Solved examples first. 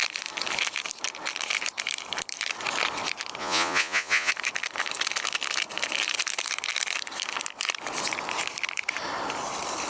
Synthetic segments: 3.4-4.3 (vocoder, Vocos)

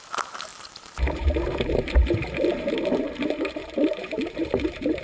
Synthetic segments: 0.0-5.0 (vocoder, BigVGAN v2)

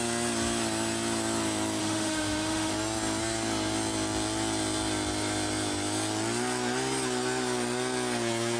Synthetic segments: 1.8-2.7 (autoencoder, DAC-VAE)

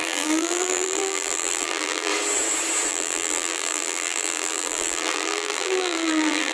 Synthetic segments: 0.0-2.1 (vocoder, BigVGAN v2); 2.9-6.5

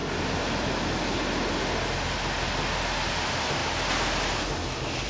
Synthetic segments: none

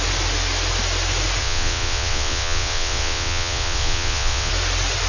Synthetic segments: 1.4-4.5 (vocoder, WaveNeXt)

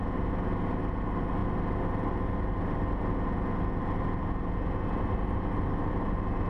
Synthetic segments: none